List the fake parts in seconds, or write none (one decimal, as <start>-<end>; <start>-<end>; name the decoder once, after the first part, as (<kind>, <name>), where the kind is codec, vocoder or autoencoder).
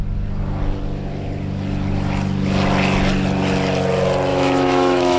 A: 4.3-5.2 (autoencoder, DAC-VAE)